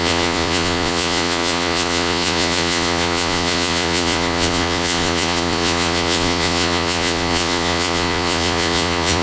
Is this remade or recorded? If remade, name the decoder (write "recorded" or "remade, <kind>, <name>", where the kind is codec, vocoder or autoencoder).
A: remade, vocoder, Vocos